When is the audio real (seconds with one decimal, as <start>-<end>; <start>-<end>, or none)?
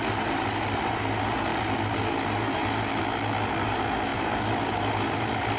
0.0-5.6